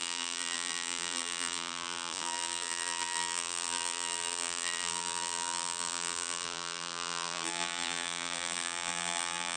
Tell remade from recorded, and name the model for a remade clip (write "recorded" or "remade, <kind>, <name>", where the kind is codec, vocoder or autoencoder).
remade, vocoder, BigVGAN v2